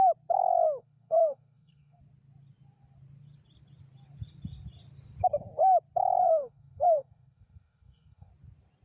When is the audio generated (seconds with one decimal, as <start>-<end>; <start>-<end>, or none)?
0.8-2.0; 6.2-8.3